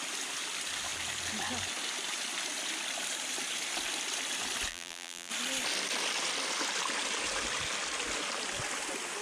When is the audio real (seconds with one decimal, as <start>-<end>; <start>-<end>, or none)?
0.0-4.7; 5.3-9.2